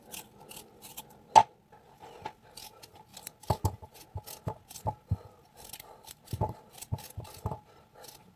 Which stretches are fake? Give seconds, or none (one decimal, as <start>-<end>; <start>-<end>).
3.1-3.9